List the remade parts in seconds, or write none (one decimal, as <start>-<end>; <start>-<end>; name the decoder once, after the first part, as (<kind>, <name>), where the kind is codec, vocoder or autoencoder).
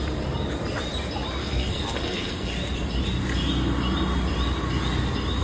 1.4-2.5 (codec, SNAC)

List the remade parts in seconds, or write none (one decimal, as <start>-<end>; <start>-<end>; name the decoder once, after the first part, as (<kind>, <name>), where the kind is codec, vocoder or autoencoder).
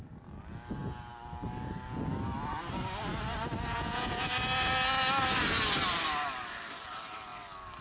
3.7-4.3 (vocoder, Vocos)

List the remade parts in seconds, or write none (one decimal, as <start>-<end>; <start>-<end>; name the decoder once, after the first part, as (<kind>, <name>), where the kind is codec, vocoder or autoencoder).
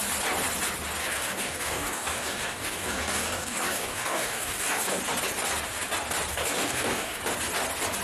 1.0-5.0 (codec, DAC); 6.3-7.2